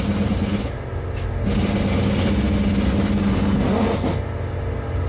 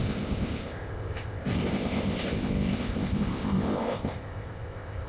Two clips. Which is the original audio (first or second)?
first